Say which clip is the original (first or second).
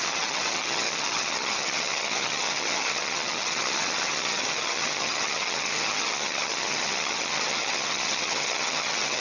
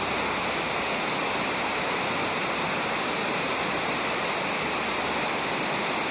second